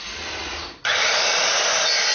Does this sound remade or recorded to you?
recorded